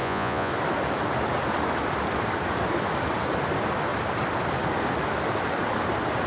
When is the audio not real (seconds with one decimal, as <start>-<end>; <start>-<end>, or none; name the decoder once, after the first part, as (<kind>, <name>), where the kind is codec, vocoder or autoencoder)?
0.0-0.5 (vocoder, Vocos)